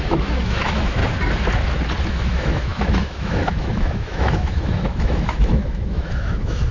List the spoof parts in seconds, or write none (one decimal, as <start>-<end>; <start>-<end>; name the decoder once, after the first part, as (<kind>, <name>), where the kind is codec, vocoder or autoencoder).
0.0-1.0 (autoencoder, DAC-VAE); 2.1-6.7